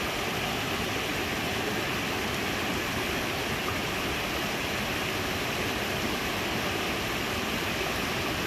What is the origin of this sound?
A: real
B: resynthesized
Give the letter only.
A